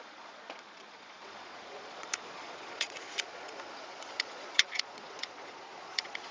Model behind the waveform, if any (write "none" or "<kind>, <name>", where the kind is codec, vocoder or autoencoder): vocoder, Vocos